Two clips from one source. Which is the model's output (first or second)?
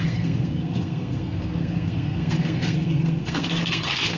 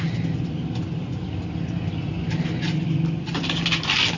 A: first